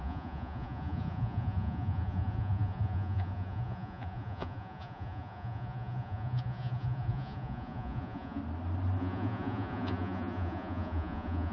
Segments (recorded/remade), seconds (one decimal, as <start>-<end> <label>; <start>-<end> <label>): 0.0-8.4 remade; 8.4-9.0 recorded; 9.0-11.5 remade